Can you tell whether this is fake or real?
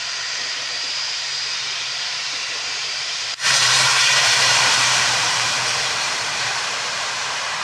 fake